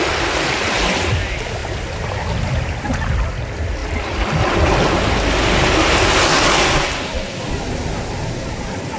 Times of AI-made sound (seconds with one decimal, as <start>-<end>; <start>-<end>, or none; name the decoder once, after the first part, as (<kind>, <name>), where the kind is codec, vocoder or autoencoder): none